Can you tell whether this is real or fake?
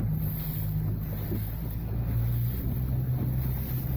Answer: real